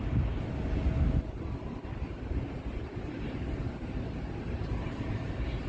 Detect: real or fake real